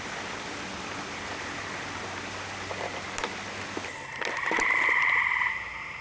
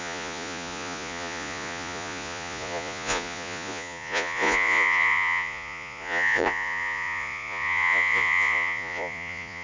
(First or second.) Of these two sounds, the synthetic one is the second